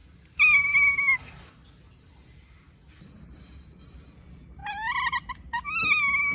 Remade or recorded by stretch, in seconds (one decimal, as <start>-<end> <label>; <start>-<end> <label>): 0.0-6.3 recorded